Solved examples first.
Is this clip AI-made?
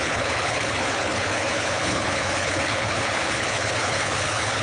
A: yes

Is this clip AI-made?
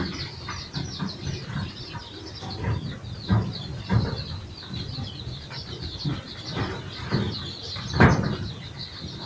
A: no